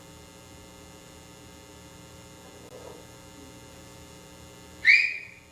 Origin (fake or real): real